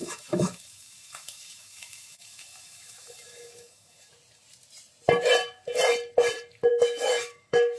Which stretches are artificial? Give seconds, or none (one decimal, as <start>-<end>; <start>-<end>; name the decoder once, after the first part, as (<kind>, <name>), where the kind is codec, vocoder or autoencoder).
0.0-4.1 (autoencoder, DAC-VAE); 6.7-7.8